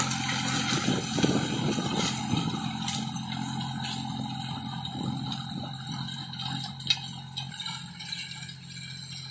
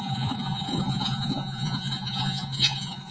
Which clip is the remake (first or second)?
second